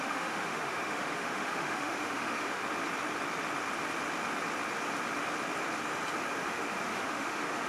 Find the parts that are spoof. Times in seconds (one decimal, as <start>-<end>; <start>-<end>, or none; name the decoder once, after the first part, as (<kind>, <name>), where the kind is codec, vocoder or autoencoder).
0.0-2.6 (autoencoder, DAC-VAE); 6.4-7.7